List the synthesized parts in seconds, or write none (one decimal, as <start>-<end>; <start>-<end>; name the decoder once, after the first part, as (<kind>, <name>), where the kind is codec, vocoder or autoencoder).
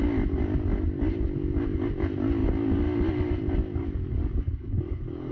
3.8-5.3 (codec, DAC)